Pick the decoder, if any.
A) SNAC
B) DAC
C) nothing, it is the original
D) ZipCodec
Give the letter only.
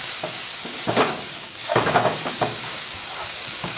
B